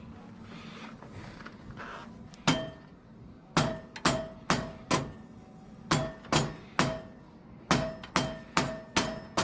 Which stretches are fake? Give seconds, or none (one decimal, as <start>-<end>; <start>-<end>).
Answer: none